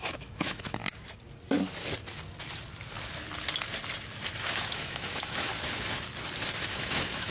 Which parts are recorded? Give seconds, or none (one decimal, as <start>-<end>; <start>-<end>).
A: 0.8-4.4; 5.5-6.7